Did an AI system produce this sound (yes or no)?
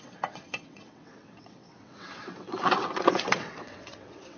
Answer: yes